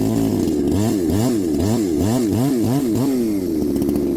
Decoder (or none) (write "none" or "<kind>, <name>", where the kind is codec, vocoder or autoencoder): none